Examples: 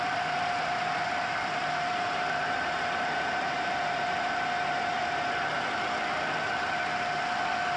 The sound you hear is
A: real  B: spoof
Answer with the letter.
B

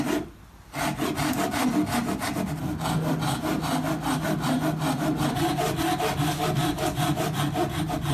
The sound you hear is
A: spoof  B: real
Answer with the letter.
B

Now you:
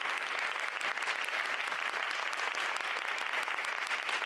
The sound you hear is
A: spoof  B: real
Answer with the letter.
A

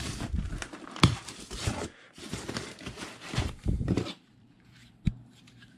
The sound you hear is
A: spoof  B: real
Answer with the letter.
A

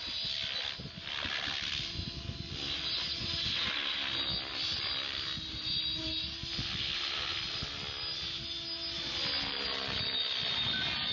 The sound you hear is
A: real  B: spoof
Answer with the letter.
A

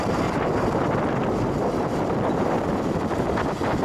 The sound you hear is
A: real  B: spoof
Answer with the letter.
B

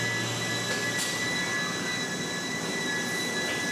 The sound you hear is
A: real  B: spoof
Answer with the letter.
A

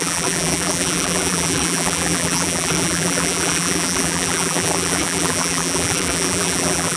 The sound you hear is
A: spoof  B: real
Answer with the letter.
A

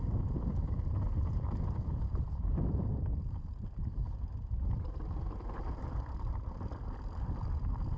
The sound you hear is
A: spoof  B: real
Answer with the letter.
A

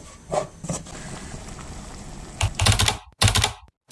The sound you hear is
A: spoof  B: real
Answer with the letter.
B